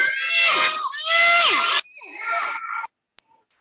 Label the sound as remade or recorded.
recorded